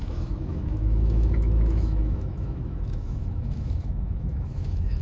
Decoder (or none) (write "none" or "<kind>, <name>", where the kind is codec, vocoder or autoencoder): autoencoder, DAC-VAE